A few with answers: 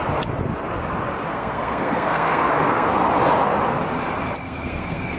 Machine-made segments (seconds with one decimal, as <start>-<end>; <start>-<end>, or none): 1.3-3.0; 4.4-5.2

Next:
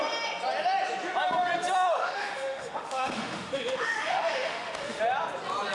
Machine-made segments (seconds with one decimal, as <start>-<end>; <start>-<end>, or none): 1.9-5.0

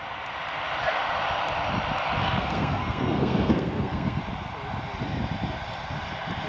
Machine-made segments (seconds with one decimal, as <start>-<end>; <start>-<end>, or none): 2.2-4.2

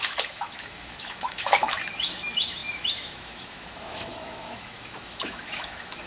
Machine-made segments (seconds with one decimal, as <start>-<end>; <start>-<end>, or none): 0.0-6.1